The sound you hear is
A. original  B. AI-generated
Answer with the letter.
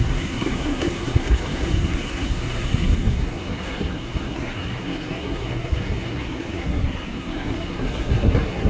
B